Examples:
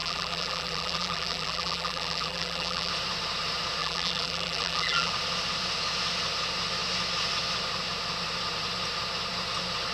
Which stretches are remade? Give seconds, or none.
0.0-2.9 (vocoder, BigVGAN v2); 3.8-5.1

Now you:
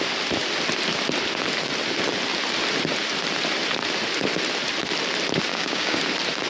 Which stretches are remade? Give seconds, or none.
5.5-6.0 (codec, DAC)